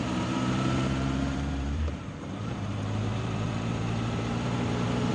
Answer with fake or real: fake